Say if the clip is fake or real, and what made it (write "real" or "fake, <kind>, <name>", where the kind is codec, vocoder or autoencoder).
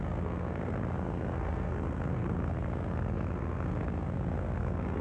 fake, codec, SNAC